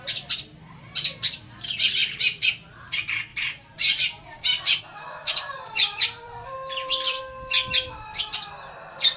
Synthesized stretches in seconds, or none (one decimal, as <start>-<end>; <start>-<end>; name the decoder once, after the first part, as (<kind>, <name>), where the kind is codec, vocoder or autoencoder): 2.0-2.5 (vocoder, BigVGAN v2); 3.3-4.8; 5.2-7.2